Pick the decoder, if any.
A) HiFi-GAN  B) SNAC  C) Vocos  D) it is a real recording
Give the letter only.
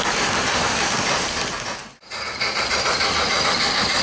D